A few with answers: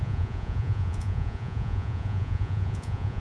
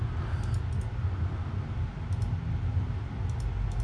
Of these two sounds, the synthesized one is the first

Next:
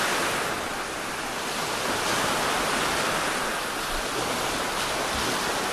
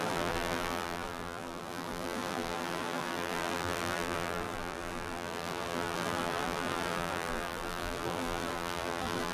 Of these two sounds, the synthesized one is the second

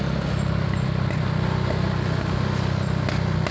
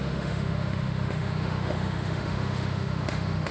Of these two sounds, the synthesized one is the second